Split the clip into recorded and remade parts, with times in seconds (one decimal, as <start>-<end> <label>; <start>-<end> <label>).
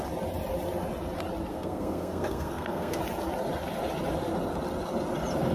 0.0-1.5 recorded; 1.5-3.0 remade; 3.0-5.5 recorded